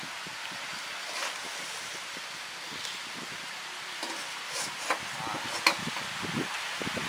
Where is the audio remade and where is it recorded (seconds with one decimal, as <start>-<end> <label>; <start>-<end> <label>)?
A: 0.0-7.1 recorded